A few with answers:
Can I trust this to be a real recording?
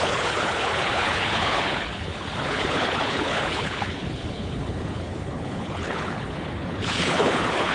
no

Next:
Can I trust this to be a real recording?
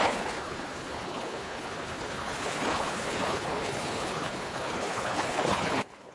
no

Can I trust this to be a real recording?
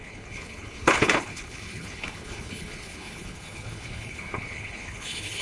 no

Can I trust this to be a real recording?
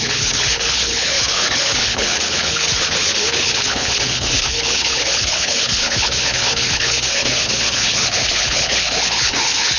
no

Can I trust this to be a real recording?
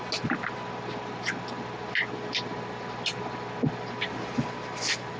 yes